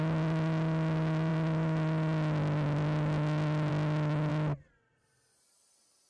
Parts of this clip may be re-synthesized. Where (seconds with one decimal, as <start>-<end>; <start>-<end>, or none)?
none